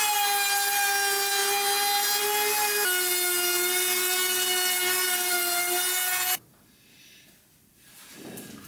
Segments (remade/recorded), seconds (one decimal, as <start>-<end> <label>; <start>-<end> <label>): 0.0-8.7 recorded